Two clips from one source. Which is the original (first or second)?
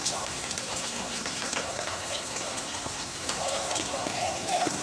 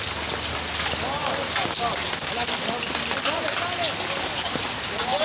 second